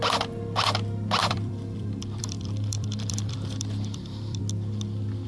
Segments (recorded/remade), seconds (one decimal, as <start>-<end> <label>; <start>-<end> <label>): 0.0-1.2 recorded; 1.2-4.4 remade; 4.4-5.3 recorded